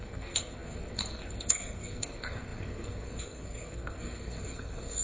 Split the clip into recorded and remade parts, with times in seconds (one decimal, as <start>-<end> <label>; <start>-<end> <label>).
0.0-5.0 remade

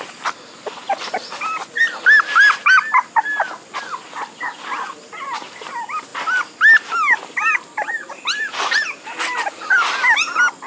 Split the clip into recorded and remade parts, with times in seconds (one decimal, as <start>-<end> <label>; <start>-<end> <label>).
0.0-10.7 recorded